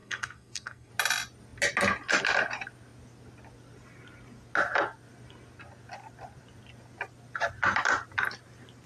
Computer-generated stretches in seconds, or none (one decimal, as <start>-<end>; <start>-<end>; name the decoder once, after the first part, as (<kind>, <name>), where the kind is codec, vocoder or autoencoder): 0.0-0.9 (codec, SNAC)